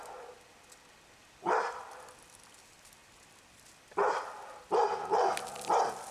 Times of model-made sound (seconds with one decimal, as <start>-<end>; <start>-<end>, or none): none